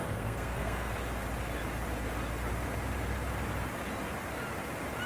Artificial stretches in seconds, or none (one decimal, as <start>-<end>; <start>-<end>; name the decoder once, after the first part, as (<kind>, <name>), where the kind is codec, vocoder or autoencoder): 0.0-0.9 (codec, SNAC)